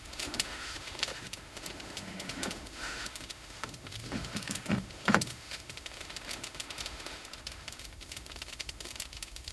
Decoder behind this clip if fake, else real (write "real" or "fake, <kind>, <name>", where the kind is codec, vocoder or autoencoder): fake, autoencoder, DAC-VAE